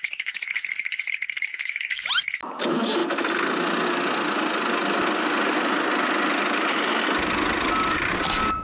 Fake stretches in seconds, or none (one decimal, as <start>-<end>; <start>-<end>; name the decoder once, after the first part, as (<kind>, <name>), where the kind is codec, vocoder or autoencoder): 1.5-2.1 (autoencoder, DAC-VAE)